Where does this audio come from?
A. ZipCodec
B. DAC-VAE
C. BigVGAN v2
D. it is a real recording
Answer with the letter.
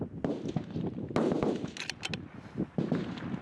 D